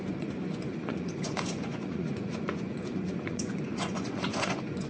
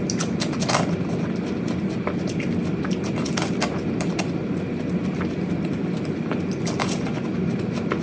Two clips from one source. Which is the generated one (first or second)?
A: first